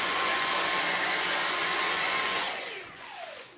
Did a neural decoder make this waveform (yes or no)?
yes